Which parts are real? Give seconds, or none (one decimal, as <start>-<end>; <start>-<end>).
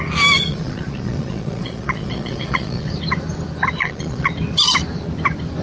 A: 0.0-0.5; 2.9-3.8; 4.3-5.6